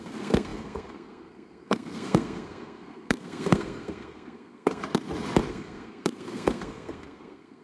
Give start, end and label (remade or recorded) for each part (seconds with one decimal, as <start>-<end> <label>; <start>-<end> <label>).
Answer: 0.0-4.8 remade; 4.8-5.5 recorded; 5.5-7.6 remade

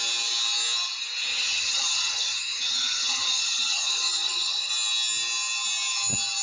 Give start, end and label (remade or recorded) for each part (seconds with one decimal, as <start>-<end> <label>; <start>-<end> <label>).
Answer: 0.0-1.3 recorded; 1.3-4.7 remade; 4.7-6.4 recorded